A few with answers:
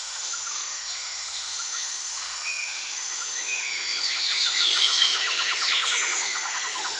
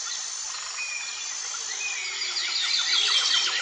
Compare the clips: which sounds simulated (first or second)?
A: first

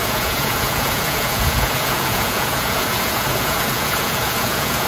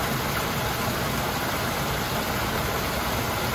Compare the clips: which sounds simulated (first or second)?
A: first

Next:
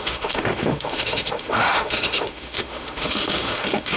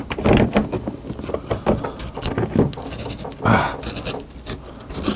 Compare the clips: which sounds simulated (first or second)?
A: first